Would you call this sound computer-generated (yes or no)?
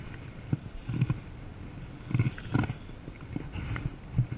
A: no